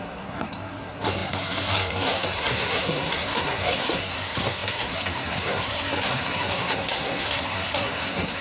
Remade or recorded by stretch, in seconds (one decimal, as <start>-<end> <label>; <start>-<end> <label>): 0.0-8.4 remade